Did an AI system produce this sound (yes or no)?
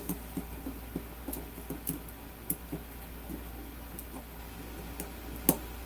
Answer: no